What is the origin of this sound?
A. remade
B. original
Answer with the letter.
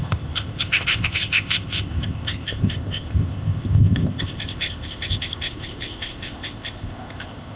A